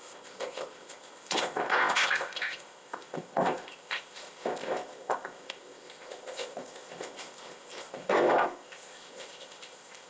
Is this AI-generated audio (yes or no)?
yes